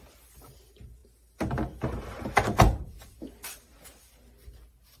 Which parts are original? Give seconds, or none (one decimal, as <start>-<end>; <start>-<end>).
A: 0.0-5.0